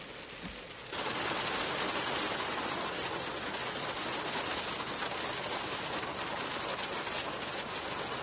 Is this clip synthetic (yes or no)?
no